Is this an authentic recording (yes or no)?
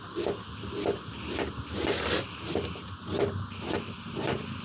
yes